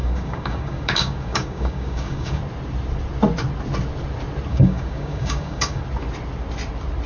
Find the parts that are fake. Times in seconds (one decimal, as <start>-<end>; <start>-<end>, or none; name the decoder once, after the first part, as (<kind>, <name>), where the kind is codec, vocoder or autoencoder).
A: 0.0-2.4 (codec, DAC); 4.5-5.8